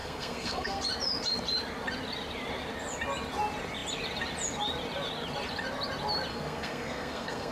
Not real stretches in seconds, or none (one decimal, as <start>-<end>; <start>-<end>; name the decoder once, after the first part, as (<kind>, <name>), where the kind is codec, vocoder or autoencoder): 0.0-0.8 (codec, SNAC); 6.3-7.5